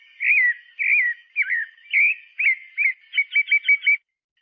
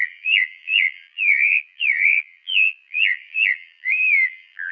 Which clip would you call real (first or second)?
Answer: first